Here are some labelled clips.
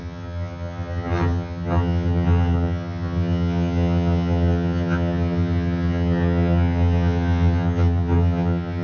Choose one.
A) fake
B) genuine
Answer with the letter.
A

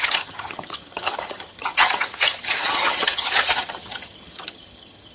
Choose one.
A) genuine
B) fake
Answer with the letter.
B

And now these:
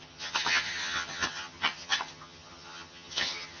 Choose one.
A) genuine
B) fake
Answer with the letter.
B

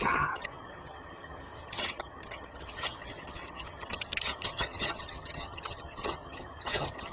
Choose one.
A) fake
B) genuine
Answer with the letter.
A